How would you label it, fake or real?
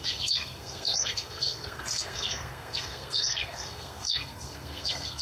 fake